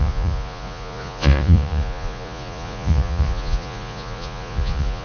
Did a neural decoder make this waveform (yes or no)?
yes